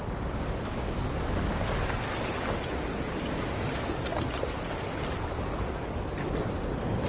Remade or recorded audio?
recorded